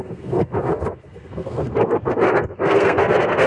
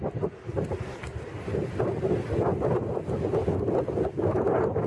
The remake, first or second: first